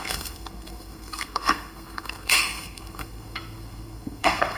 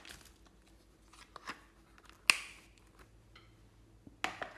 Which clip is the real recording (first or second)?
second